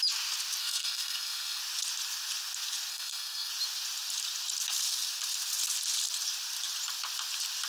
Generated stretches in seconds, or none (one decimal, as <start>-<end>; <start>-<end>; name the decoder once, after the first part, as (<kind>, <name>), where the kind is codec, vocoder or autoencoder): 0.6-1.6 (codec, SNAC); 2.9-3.5